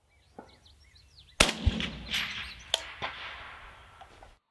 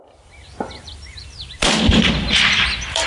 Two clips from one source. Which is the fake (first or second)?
second